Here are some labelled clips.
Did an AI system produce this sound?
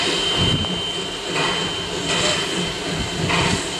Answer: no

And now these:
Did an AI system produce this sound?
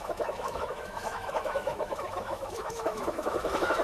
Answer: yes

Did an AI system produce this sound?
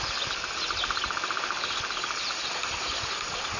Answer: no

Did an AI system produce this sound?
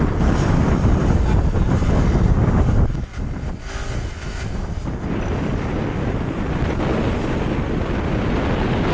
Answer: no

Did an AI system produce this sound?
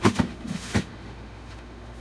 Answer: yes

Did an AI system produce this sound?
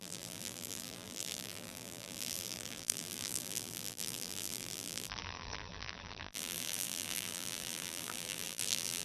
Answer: yes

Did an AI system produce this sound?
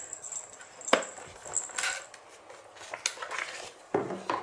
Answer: no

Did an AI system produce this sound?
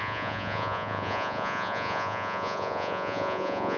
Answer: yes